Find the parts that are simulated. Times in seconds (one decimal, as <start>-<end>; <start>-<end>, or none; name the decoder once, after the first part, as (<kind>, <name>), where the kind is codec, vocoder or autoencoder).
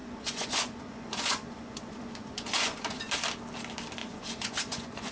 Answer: 0.0-3.1 (vocoder, Vocos); 4.0-5.1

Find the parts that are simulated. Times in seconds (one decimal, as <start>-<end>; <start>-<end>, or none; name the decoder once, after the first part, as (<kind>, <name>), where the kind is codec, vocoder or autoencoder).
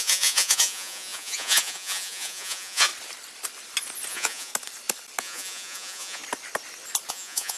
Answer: 0.0-2.9 (vocoder, Vocos); 4.1-4.5; 5.2-6.2; 7.1-7.6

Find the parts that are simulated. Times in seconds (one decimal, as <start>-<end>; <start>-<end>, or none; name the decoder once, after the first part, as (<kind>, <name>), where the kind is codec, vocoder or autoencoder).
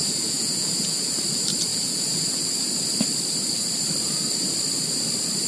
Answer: 0.0-1.1 (vocoder, Vocos); 1.7-2.4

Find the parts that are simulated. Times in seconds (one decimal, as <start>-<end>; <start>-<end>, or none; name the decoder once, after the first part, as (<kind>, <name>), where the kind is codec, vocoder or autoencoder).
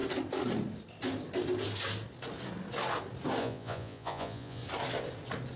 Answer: 3.4-4.6 (vocoder, Vocos)